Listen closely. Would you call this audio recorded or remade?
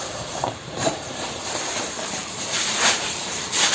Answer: remade